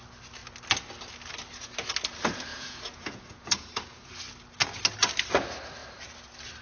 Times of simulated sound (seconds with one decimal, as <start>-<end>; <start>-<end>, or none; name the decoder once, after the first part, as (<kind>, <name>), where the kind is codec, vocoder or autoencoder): 2.5-4.1 (vocoder, Vocos)